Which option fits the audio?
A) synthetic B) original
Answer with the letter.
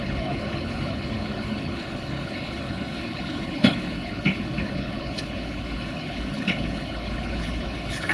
A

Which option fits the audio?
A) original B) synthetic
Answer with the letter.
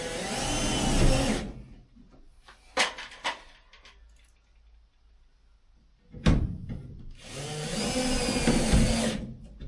A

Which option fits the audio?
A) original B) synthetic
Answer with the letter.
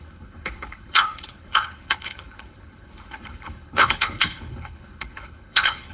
B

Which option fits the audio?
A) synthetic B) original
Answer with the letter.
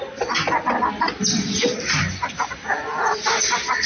B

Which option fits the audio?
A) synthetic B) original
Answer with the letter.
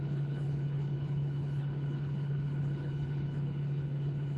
A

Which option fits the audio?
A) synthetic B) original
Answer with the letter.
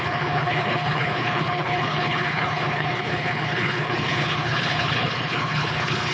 A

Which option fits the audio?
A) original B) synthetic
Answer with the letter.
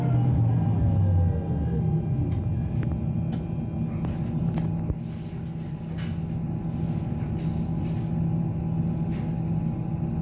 A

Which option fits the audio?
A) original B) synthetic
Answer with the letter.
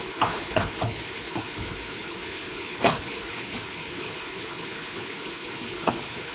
B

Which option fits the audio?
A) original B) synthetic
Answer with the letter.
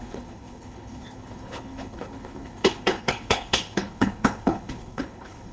B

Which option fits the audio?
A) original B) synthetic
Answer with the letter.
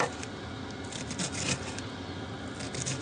A